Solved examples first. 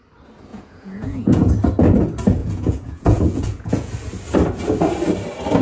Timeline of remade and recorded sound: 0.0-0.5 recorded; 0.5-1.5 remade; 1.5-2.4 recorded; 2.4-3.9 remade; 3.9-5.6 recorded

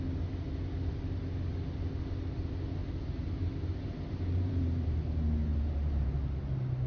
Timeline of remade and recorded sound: 0.0-2.8 recorded; 2.8-5.0 remade; 5.0-5.5 recorded; 5.5-6.9 remade